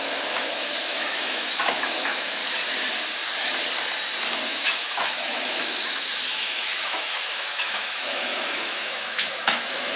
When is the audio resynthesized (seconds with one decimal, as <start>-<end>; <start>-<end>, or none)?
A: 0.0-2.4; 4.5-10.0